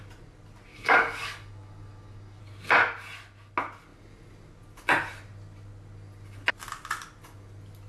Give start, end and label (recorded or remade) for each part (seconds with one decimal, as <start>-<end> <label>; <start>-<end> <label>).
0.0-0.7 recorded; 0.7-2.4 remade; 2.4-7.9 recorded